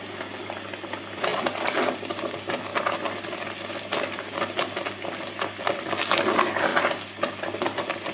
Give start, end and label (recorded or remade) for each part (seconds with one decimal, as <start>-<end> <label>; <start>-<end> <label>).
0.0-8.1 recorded